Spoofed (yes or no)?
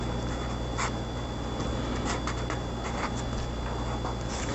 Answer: no